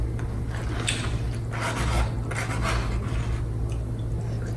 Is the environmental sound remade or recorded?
recorded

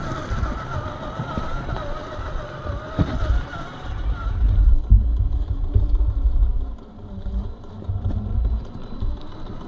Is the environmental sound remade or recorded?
recorded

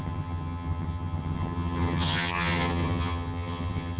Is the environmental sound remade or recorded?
remade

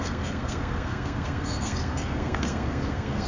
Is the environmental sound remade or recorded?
remade